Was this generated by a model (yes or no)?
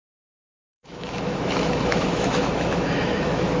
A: yes